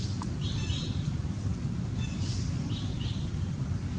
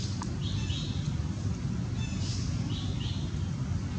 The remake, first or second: first